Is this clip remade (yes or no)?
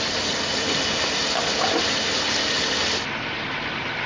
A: no